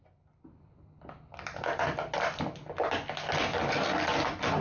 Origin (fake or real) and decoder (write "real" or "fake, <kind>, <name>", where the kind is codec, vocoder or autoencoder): real